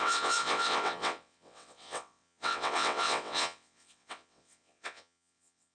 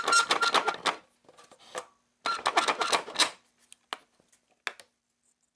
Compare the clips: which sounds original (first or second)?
second